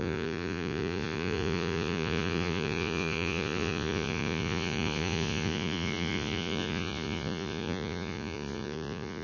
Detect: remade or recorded remade